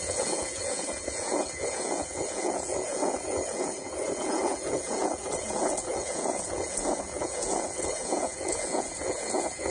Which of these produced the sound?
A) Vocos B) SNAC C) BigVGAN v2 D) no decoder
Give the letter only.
A